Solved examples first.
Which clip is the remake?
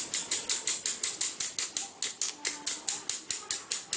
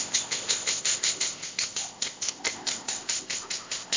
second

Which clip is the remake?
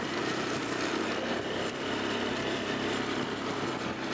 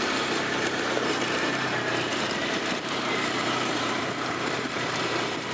second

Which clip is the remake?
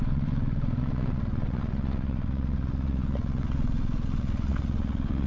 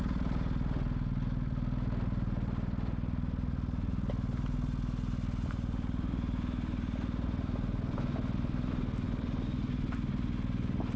first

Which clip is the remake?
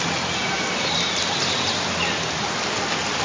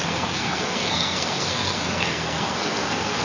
second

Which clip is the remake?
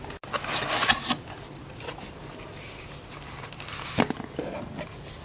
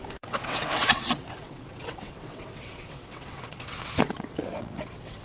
second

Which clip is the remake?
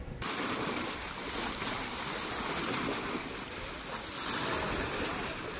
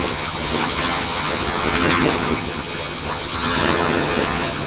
second